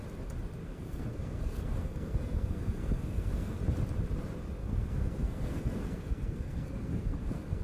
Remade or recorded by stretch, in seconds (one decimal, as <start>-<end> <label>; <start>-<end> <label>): 0.0-0.6 recorded; 0.6-3.6 remade; 3.6-4.6 recorded; 4.6-7.6 remade